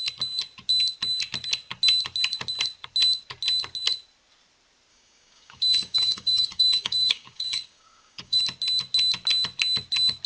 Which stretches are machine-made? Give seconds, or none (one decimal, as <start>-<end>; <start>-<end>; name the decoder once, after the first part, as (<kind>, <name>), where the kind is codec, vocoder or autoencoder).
4.9-8.4 (codec, DAC)